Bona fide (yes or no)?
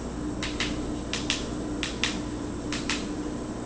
yes